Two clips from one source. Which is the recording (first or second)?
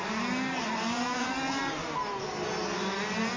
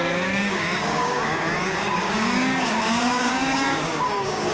first